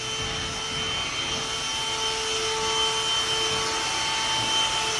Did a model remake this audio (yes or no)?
no